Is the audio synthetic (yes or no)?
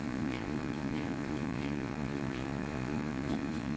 yes